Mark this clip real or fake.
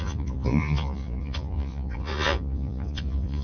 fake